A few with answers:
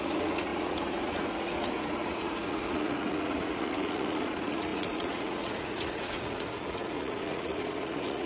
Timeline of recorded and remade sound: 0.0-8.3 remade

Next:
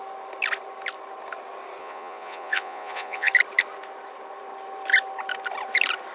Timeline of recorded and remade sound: 0.0-1.8 recorded; 1.8-3.3 remade; 3.3-6.1 recorded

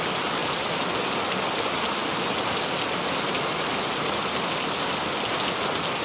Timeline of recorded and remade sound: 0.0-6.0 recorded